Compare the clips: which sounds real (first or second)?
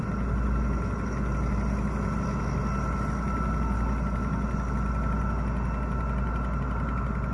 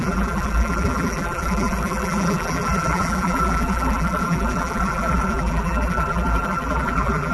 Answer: first